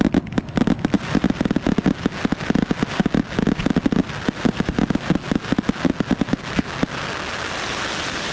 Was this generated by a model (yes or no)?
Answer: no